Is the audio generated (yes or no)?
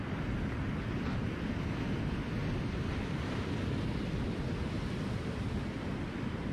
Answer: no